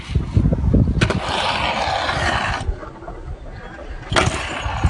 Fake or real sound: real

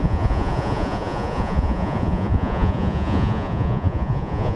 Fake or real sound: fake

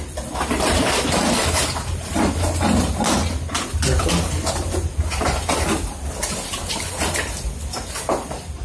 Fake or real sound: real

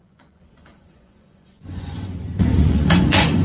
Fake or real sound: fake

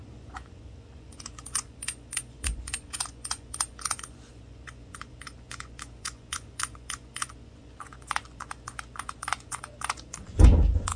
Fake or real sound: fake